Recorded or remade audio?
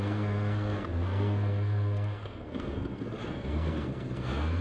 remade